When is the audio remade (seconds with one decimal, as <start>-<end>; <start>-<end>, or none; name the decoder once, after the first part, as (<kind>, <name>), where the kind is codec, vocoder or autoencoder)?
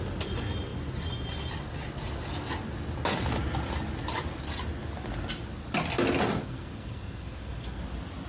6.4-7.8 (codec, SNAC)